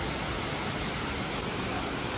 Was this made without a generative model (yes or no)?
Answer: yes